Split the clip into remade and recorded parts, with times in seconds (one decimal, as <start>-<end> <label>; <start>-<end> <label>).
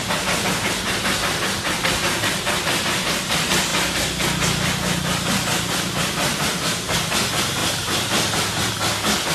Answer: 0.0-7.6 recorded; 7.6-8.7 remade; 8.7-9.3 recorded